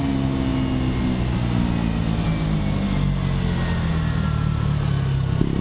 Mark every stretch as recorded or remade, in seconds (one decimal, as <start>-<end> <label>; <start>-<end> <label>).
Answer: 0.0-5.6 recorded